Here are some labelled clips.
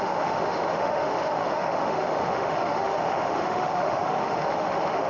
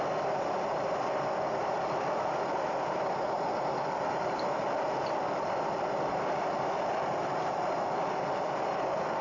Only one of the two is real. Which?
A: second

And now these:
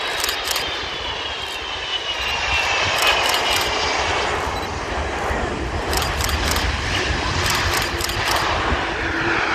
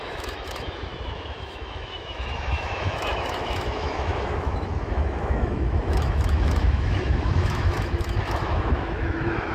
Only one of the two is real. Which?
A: first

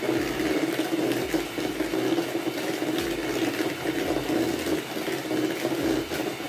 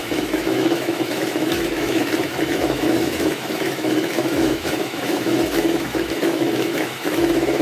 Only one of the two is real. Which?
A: first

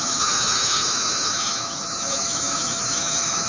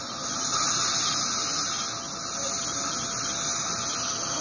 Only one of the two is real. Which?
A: second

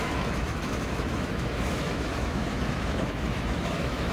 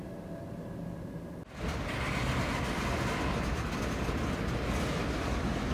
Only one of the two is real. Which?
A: second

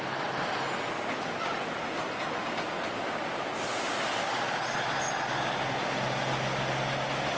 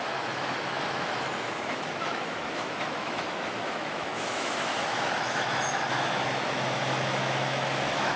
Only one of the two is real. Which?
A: first